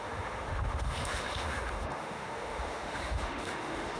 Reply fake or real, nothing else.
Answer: fake